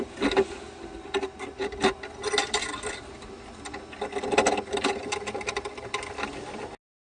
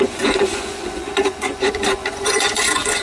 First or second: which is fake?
second